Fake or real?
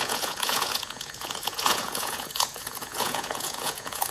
fake